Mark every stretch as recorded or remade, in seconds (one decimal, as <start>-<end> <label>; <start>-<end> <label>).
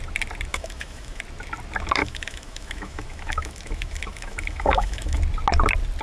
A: 0.0-0.5 recorded; 0.5-1.2 remade; 1.2-2.0 recorded; 2.0-5.2 remade; 5.2-6.0 recorded